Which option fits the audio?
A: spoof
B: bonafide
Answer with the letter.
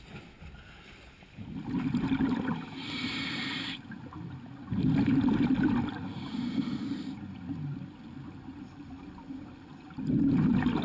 B